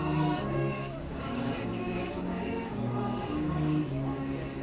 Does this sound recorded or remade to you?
remade